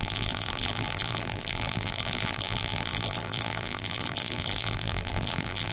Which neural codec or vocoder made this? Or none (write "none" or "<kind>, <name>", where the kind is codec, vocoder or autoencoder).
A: vocoder, BigVGAN v2